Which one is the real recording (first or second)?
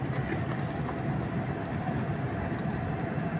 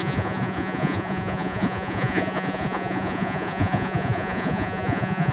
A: first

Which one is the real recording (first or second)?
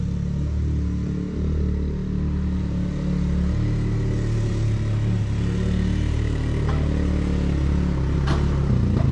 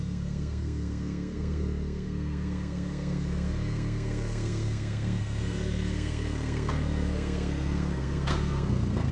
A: first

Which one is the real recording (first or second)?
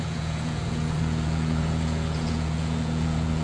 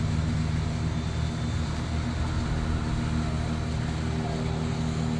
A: second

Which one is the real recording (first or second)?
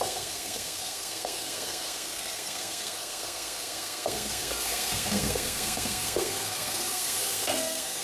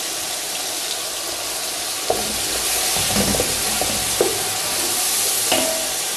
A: second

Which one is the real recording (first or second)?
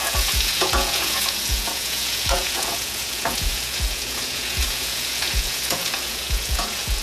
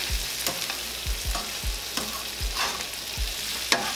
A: second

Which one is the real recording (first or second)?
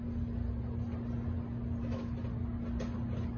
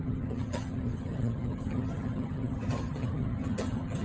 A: first